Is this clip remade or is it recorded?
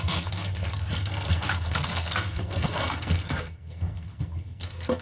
remade